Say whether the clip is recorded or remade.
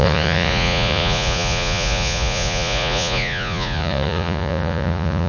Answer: remade